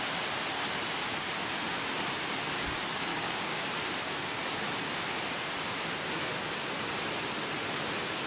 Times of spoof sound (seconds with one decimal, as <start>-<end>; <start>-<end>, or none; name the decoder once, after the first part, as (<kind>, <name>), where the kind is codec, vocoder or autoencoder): 3.1-3.6 (codec, DAC)